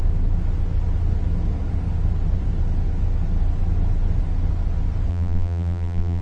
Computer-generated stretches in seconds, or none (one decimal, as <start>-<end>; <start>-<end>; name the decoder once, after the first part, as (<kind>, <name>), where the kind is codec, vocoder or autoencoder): 5.1-6.2 (vocoder, BigVGAN v2)